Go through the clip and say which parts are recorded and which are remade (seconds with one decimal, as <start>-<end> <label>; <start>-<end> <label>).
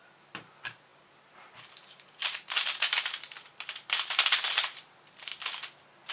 0.0-5.3 remade; 5.3-6.1 recorded